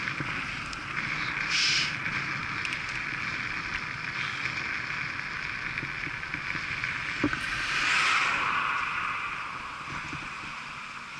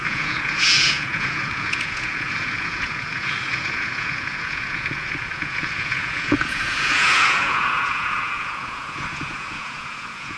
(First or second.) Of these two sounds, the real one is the first